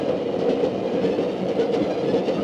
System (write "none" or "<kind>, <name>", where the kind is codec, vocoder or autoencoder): none